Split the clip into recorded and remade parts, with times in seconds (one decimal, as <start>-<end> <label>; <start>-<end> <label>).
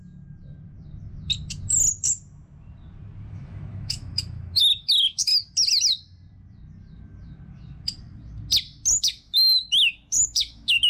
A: 0.0-3.3 recorded; 3.3-5.3 remade; 5.3-9.0 recorded; 9.0-10.9 remade